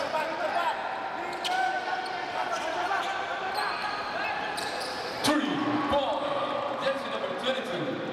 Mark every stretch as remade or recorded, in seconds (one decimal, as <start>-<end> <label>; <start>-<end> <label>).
0.0-3.8 recorded; 3.8-5.4 remade; 5.4-8.1 recorded